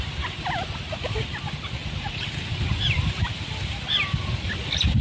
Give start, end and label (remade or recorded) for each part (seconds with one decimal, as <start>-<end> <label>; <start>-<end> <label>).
0.0-5.0 recorded